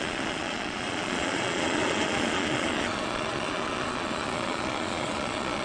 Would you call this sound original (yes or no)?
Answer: no